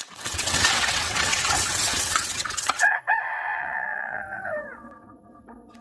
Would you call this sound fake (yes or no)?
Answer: yes